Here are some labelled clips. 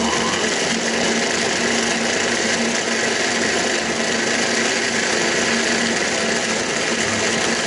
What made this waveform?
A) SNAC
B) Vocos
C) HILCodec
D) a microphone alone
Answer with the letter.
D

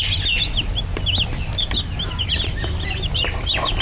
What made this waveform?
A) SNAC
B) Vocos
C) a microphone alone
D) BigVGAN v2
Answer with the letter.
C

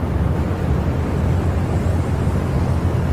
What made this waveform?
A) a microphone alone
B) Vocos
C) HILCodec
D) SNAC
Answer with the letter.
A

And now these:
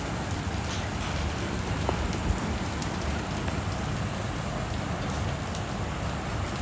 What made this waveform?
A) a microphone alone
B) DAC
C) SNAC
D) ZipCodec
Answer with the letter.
A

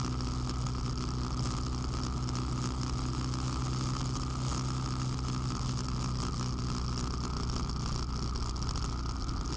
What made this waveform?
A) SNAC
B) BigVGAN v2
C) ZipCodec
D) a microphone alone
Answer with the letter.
D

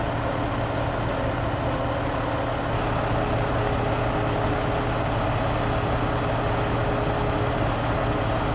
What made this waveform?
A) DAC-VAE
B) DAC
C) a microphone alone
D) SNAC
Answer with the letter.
C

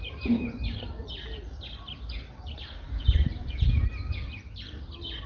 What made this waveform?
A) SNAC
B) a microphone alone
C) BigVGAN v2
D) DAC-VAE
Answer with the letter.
B